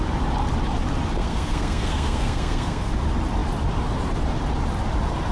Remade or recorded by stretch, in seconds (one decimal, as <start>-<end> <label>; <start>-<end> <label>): 0.0-1.2 recorded; 1.2-2.9 remade; 2.9-5.3 recorded